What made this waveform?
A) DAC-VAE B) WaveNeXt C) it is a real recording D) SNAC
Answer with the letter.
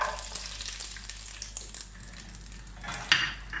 C